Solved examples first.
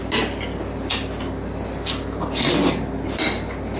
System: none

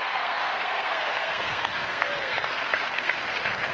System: codec, SNAC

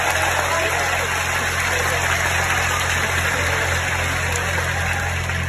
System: none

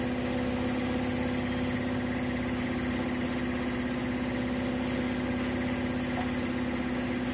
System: none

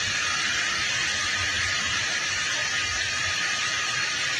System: none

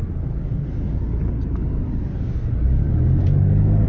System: codec, DAC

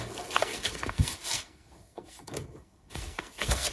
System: codec, SNAC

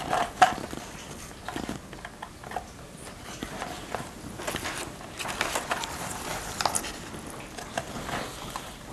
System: none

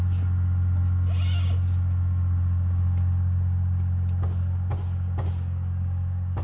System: none